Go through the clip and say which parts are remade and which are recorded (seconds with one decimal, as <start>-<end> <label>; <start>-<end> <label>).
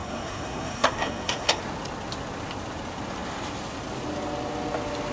0.0-1.6 remade; 1.6-5.1 recorded